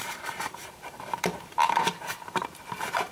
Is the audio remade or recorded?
remade